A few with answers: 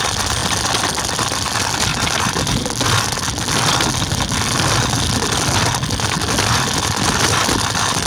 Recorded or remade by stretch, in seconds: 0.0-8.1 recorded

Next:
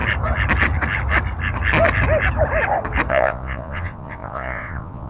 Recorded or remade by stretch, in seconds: 0.0-3.1 recorded; 3.1-5.1 remade

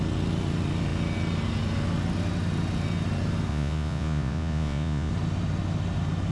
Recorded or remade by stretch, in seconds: 0.0-3.5 recorded; 3.5-5.1 remade; 5.1-6.3 recorded

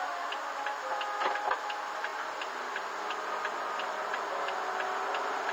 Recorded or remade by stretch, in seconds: 0.0-5.5 recorded

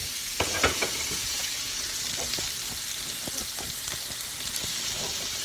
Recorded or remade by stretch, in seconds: 0.0-2.0 remade; 2.0-5.4 recorded

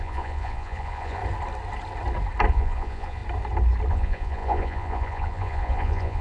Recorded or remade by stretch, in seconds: 0.0-1.2 remade; 1.2-2.5 recorded; 2.5-3.2 remade; 3.2-3.9 recorded; 3.9-6.2 remade